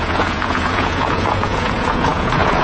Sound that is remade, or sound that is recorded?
remade